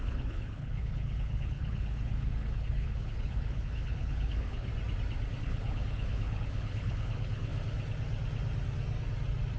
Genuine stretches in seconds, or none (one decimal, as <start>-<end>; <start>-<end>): 4.7-5.4; 7.5-9.6